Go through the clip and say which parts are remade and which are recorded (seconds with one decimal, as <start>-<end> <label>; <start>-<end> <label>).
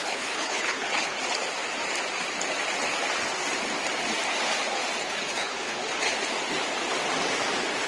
0.0-1.2 remade; 1.2-5.0 recorded; 5.0-6.0 remade; 6.0-7.9 recorded